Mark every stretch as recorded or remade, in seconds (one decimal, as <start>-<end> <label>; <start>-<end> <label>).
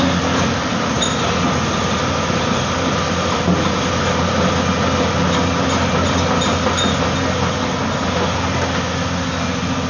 0.0-9.9 recorded